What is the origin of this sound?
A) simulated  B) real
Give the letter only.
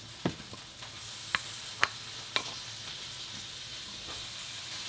B